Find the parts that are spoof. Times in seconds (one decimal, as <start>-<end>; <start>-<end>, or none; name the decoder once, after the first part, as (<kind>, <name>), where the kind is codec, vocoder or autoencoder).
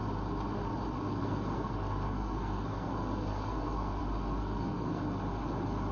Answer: 1.1-4.0 (codec, SNAC); 4.4-5.0